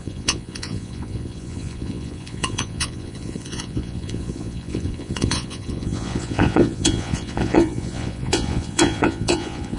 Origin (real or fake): fake